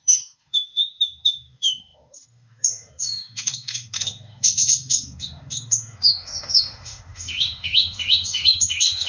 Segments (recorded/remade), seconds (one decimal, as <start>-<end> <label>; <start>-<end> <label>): 0.0-9.1 remade

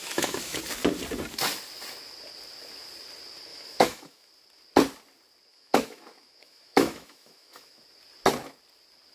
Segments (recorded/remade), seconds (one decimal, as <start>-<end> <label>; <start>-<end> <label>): 0.0-0.6 remade; 0.6-3.5 recorded; 3.5-4.3 remade; 4.3-5.5 recorded; 5.5-7.8 remade; 7.8-9.1 recorded

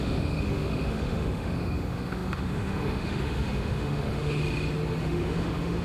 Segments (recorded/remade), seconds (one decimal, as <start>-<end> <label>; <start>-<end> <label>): 0.0-4.4 remade; 4.4-5.0 recorded; 5.0-5.8 remade

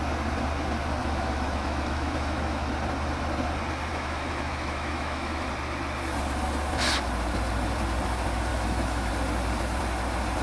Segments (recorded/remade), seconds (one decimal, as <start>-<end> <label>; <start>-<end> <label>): 0.0-1.0 recorded; 1.0-2.7 remade; 2.7-3.9 recorded; 3.9-5.5 remade; 5.5-8.5 recorded; 8.5-9.1 remade; 9.1-10.4 recorded

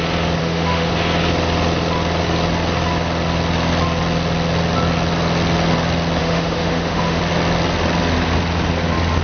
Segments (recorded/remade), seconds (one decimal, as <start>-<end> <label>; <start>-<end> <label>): 0.0-0.4 recorded; 0.4-0.9 remade; 0.9-6.2 recorded; 6.2-7.2 remade; 7.2-9.2 recorded

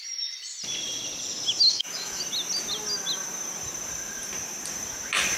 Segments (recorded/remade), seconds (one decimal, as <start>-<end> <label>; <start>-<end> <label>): 0.0-1.7 recorded; 1.7-2.2 remade; 2.2-5.4 recorded

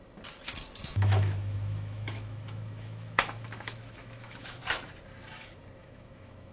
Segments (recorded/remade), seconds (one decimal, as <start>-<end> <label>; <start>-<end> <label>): 0.0-0.8 recorded; 0.8-4.6 remade; 4.6-5.8 recorded; 5.8-6.5 remade